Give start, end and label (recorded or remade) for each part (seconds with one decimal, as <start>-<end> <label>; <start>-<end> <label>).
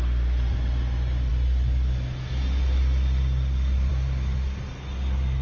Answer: 0.0-5.4 recorded